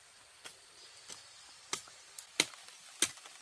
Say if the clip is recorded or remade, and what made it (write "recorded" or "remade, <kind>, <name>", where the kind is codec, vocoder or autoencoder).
recorded